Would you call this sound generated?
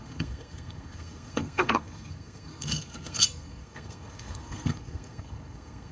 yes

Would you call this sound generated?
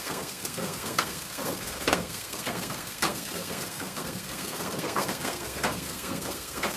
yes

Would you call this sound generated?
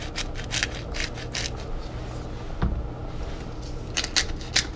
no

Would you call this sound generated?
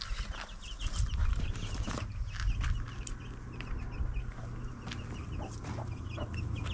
no